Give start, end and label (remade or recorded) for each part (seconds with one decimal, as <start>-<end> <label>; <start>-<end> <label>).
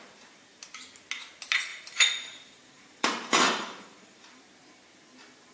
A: 0.0-1.7 recorded; 1.7-4.4 remade; 4.4-5.5 recorded